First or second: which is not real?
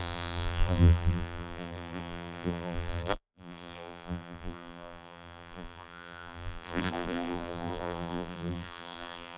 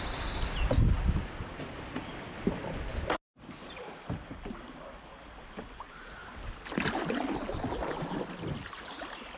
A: first